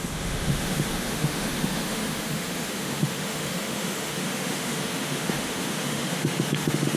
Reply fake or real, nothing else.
fake